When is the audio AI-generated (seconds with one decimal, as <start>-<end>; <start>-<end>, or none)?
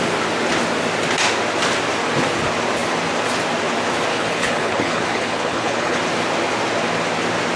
4.1-6.0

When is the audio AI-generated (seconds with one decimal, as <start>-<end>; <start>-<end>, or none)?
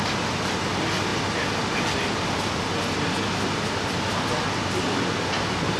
none